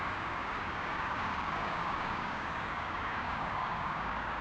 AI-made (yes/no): yes